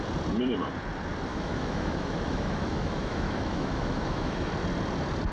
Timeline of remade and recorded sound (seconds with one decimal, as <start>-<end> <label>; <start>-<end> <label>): 0.0-1.3 recorded; 1.3-4.5 remade; 4.5-5.3 recorded